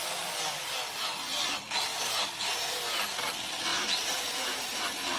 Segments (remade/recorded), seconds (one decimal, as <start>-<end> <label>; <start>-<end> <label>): 0.0-1.9 recorded; 1.9-2.5 remade; 2.5-3.7 recorded; 3.7-4.8 remade; 4.8-5.2 recorded